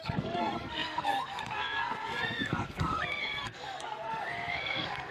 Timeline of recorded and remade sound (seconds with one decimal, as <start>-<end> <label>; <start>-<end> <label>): 0.0-5.1 remade